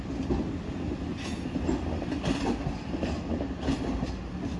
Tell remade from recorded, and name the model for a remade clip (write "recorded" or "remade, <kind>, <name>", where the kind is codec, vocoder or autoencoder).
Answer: recorded